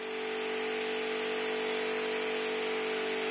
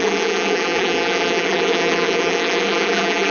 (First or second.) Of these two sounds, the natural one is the first